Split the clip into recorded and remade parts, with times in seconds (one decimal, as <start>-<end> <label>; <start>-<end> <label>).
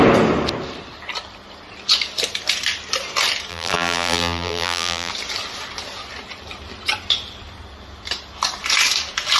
0.0-3.5 recorded; 3.5-5.1 remade; 5.1-9.4 recorded